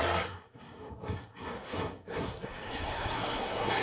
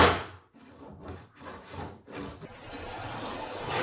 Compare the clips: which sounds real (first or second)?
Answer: second